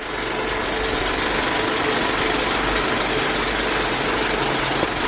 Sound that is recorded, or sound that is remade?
recorded